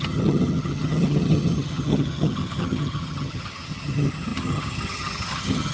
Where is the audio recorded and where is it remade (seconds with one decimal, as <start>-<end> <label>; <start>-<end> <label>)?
0.0-5.7 remade